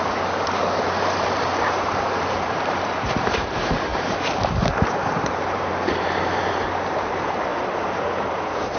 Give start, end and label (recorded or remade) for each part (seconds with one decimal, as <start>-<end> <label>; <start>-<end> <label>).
0.0-7.5 remade; 7.5-8.3 recorded; 8.3-8.8 remade

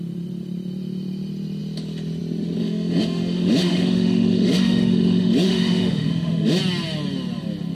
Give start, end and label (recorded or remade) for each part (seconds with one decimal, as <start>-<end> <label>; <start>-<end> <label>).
0.0-2.6 recorded; 2.6-6.5 remade; 6.5-7.7 recorded

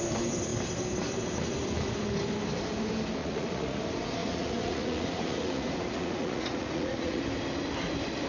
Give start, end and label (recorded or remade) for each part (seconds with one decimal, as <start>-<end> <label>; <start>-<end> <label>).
0.0-3.2 recorded; 3.2-3.8 remade; 3.8-4.2 recorded; 4.2-7.2 remade; 7.2-8.3 recorded

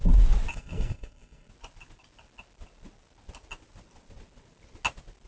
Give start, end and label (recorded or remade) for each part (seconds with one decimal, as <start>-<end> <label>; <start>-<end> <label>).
0.0-0.5 recorded; 0.5-1.5 remade; 1.5-5.3 recorded

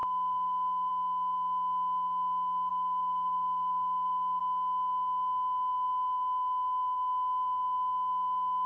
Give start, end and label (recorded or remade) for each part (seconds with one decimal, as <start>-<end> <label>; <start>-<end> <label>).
0.0-0.9 remade; 0.9-2.7 recorded; 2.7-4.4 remade; 4.4-8.7 recorded

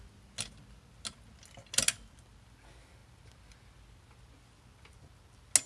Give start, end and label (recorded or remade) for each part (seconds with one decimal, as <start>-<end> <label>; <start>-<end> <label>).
0.0-5.7 recorded

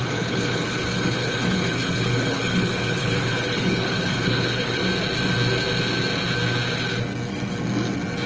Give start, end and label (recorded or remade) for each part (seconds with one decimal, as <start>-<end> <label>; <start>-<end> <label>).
0.0-4.8 remade; 4.8-8.3 recorded

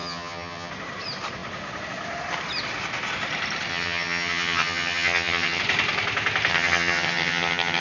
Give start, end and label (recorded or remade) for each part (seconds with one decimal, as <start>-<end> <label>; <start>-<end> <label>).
0.0-0.7 remade; 0.7-3.7 recorded; 3.7-5.6 remade; 5.6-6.5 recorded; 6.5-7.8 remade